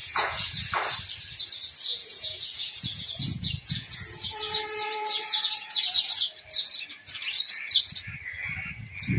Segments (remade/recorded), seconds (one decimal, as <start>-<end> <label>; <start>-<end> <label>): 0.0-0.6 remade; 0.6-1.9 recorded; 1.9-6.1 remade; 6.1-9.2 recorded